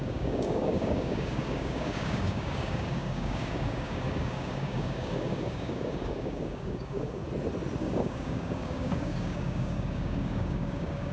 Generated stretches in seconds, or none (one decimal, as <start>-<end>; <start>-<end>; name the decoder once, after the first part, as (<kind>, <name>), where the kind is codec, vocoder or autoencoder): 0.0-7.2 (codec, DAC); 7.8-11.1

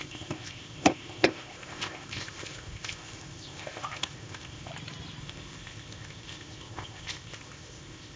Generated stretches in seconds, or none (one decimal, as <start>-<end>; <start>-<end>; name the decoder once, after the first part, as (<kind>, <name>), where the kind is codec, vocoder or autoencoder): 0.0-4.7 (codec, ZipCodec); 5.2-8.2

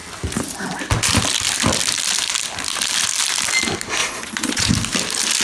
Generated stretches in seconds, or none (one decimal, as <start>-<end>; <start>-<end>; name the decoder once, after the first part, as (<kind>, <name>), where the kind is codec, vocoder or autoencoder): 4.0-4.7 (vocoder, Vocos)

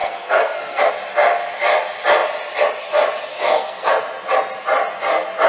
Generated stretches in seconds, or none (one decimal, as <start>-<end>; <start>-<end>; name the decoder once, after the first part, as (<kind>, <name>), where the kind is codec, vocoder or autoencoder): 0.0-0.9 (codec, SNAC); 3.3-4.0

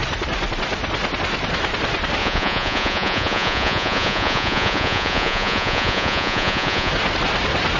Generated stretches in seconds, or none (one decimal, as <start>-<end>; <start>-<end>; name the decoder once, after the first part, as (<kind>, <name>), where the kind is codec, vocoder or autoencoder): 2.2-6.9 (vocoder, Vocos)

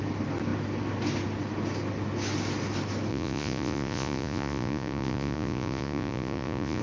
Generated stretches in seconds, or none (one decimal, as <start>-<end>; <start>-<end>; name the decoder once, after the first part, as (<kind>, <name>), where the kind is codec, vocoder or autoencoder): 3.1-6.8 (vocoder, Vocos)

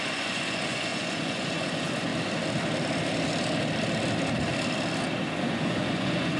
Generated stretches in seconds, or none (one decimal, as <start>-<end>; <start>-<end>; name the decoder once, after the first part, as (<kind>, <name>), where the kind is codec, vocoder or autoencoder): 0.0-2.1 (vocoder, Vocos); 5.5-6.4